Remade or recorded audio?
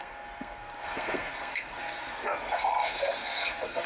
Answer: remade